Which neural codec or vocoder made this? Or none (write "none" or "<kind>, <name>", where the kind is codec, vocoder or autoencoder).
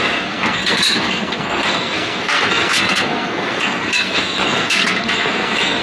codec, SNAC